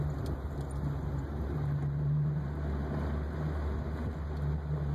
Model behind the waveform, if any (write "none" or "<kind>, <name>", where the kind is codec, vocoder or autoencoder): none